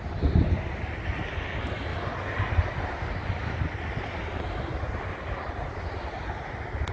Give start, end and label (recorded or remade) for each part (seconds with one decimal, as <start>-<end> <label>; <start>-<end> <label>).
0.0-6.9 recorded